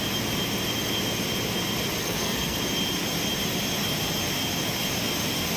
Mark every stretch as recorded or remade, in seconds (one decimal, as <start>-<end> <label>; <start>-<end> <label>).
0.0-2.0 recorded; 2.0-2.6 remade; 2.6-5.6 recorded

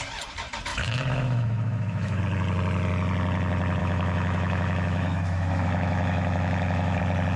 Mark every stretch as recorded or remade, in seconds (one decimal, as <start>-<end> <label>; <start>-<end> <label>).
0.0-0.7 recorded; 0.7-2.2 remade; 2.2-3.8 recorded; 3.8-7.0 remade; 7.0-7.4 recorded

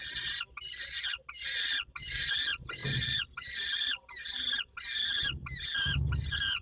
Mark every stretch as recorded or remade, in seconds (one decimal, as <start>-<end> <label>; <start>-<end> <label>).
0.0-6.6 recorded

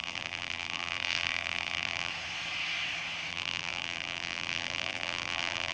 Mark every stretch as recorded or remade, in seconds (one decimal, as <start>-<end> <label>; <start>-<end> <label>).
0.0-2.1 remade; 2.1-3.3 recorded; 3.3-5.7 remade

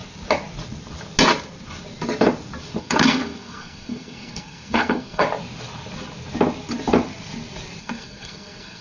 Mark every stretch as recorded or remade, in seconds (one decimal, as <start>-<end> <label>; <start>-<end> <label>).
0.0-2.8 recorded; 2.8-5.2 remade; 5.2-7.8 recorded; 7.8-8.8 remade

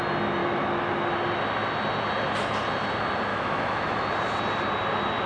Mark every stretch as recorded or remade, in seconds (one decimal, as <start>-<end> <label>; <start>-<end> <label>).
0.0-0.4 recorded; 0.4-0.9 remade; 0.9-3.3 recorded; 3.3-4.1 remade; 4.1-5.3 recorded